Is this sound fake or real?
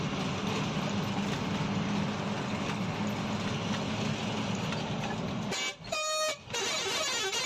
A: real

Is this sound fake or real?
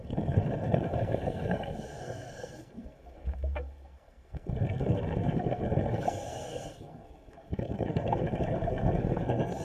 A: fake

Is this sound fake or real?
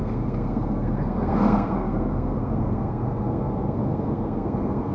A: fake